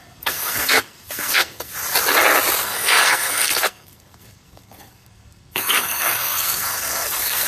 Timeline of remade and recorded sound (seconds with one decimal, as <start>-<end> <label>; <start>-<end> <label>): 0.0-1.7 remade; 1.7-2.6 recorded; 2.6-7.5 remade